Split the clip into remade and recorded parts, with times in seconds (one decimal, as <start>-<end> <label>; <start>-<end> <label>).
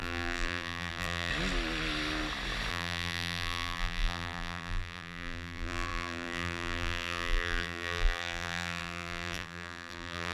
0.0-1.3 remade; 1.3-2.7 recorded; 2.7-10.3 remade